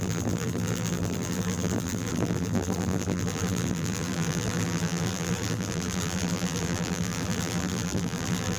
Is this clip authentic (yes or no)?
no